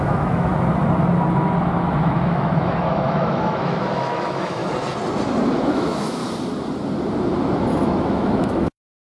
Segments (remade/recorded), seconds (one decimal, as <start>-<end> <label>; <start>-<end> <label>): 0.0-0.5 remade; 0.5-2.0 recorded; 2.0-4.6 remade; 4.6-5.6 recorded; 5.6-6.2 remade; 6.2-7.7 recorded; 7.7-9.1 remade

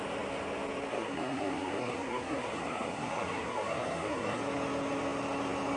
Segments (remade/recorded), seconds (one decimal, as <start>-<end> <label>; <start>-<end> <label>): 0.0-0.9 recorded; 0.9-4.4 remade; 4.4-5.8 recorded

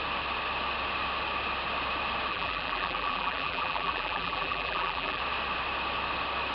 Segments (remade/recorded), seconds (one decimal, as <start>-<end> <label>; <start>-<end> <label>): 0.0-2.3 recorded; 2.3-5.2 remade; 5.2-6.5 recorded

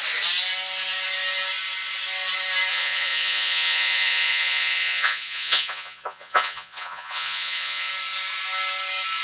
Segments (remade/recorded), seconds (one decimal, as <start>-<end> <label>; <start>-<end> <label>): 0.0-2.7 recorded; 2.7-7.9 remade; 7.9-9.2 recorded

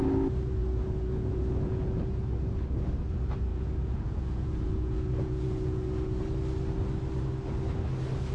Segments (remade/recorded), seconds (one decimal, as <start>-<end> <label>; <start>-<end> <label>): 0.0-0.6 recorded; 0.6-2.0 remade; 2.0-3.5 recorded; 3.5-6.2 remade; 6.2-8.3 recorded